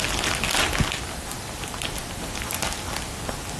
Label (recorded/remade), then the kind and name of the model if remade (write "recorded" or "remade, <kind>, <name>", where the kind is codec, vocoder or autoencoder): recorded